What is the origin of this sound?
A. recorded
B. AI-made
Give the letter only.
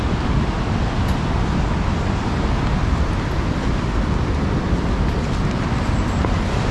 A